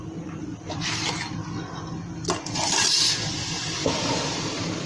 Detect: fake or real real